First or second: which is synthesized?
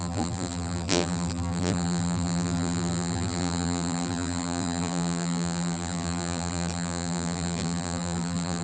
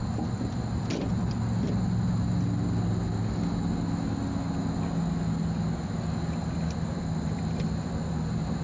first